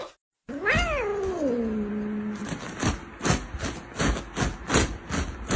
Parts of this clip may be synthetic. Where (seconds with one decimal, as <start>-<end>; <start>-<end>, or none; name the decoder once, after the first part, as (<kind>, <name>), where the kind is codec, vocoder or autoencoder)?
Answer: none